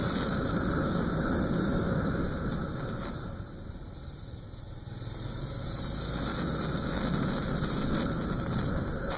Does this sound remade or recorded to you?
recorded